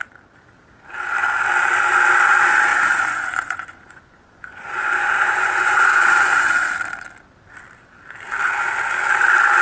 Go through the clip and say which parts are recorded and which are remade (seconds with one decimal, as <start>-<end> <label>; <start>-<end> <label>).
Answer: 0.0-2.7 recorded; 2.7-6.7 remade; 6.7-9.6 recorded